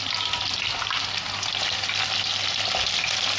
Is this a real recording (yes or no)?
yes